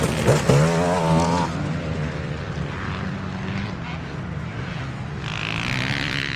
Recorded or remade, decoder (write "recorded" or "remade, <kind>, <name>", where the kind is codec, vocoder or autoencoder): recorded